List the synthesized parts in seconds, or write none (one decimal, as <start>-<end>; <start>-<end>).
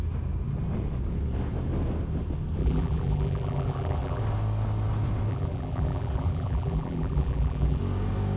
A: 2.6-4.2; 5.3-7.8